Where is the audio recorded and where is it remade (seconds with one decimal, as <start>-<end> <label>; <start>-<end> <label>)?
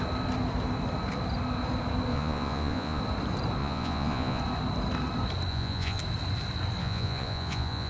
0.0-2.1 recorded; 2.1-3.0 remade; 3.0-3.6 recorded; 3.6-4.4 remade; 4.4-5.5 recorded; 5.5-6.0 remade; 6.0-6.8 recorded; 6.8-7.9 remade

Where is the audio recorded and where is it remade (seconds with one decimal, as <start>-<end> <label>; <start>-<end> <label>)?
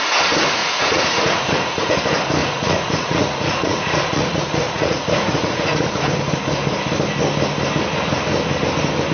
0.0-0.6 recorded; 0.6-2.0 remade; 2.0-2.4 recorded; 2.4-6.0 remade; 6.0-9.1 recorded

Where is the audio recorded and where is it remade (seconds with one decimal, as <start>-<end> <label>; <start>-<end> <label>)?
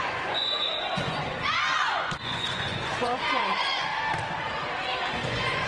0.0-3.9 remade; 3.9-5.1 recorded; 5.1-5.7 remade